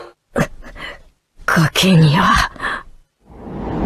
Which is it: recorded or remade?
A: recorded